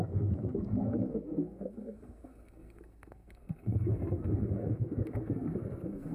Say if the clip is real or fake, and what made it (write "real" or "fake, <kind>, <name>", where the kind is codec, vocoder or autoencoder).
fake, codec, SNAC